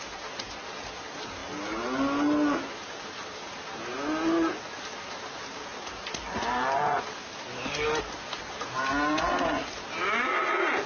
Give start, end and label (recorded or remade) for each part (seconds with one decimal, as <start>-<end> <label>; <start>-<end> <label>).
0.0-10.9 recorded